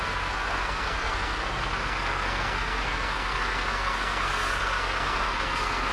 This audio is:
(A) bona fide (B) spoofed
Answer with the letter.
B